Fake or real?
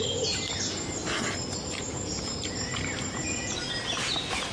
real